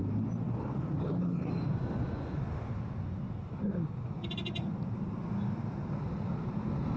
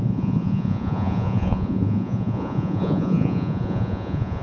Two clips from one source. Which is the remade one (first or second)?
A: second